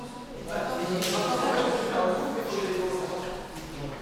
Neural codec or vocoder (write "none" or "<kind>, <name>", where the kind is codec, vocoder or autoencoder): none